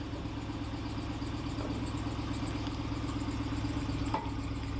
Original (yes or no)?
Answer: yes